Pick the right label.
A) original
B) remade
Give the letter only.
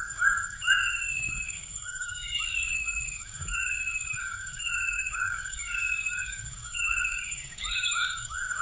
B